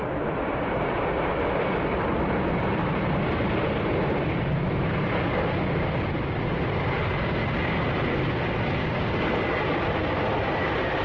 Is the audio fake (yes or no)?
no